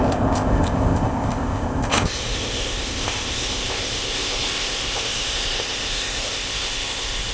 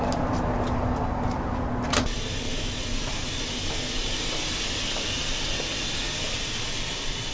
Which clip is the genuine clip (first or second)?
second